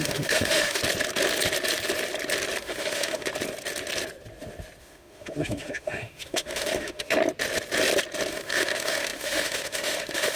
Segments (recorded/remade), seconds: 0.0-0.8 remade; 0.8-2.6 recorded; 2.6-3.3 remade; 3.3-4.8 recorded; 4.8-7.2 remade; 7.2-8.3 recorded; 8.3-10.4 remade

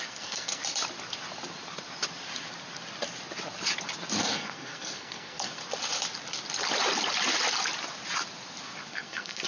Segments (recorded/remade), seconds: 0.0-0.6 remade; 0.6-4.2 recorded; 4.2-5.6 remade; 5.6-8.9 recorded; 8.9-9.5 remade

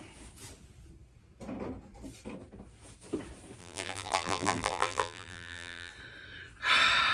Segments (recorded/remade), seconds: 0.0-3.6 recorded; 3.6-5.9 remade; 5.9-7.1 recorded

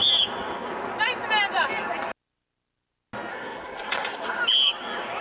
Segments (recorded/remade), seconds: 0.0-3.3 recorded; 3.3-4.4 remade; 4.4-5.2 recorded

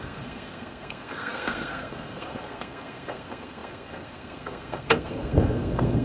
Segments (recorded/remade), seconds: 0.0-6.0 remade

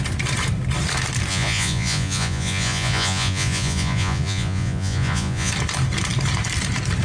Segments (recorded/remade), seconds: 0.0-1.3 recorded; 1.3-5.5 remade; 5.5-7.0 recorded

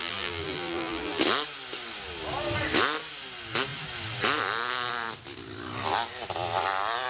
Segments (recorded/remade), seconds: 0.0-1.2 remade; 1.2-7.1 recorded

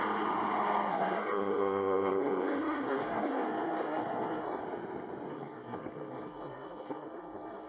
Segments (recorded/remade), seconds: 0.0-0.9 recorded; 0.9-4.6 remade; 4.6-5.3 recorded; 5.3-7.7 remade